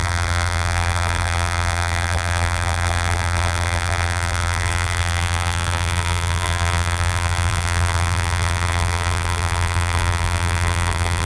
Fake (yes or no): yes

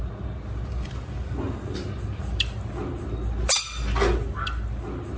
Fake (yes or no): no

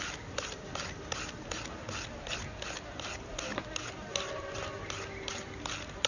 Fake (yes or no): no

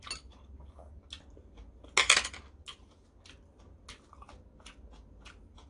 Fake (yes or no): no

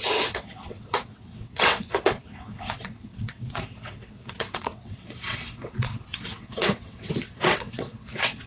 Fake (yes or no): yes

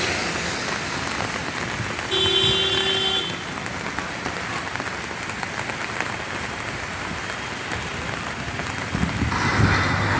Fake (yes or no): no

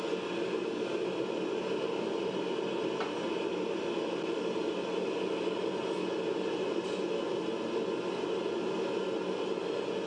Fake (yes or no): no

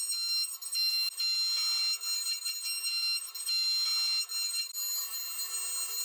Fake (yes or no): no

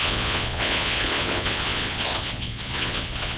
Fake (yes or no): yes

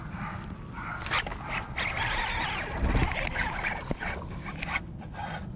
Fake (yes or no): no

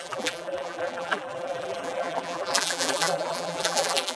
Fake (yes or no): yes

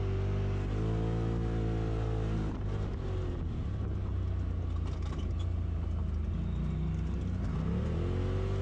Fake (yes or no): no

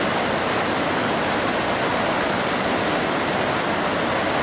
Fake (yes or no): no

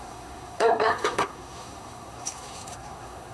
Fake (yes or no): yes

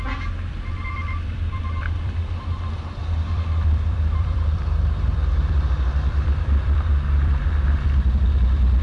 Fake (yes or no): yes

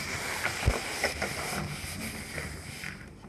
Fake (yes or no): no